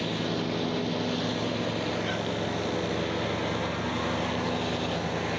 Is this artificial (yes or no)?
no